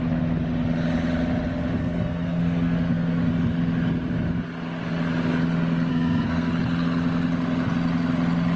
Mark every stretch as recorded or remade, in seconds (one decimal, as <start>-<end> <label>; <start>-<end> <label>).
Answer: 0.0-1.8 recorded; 1.8-3.3 remade; 3.3-5.9 recorded; 5.9-6.5 remade; 6.5-8.6 recorded